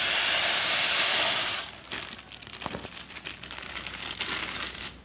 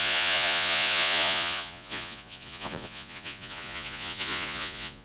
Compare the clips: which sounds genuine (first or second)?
first